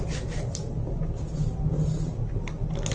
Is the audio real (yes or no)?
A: yes